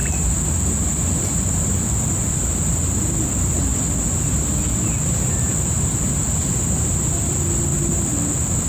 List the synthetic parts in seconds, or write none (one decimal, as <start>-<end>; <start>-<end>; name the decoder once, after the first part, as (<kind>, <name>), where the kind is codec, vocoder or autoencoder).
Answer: none